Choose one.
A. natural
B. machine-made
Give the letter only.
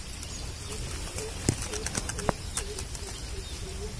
A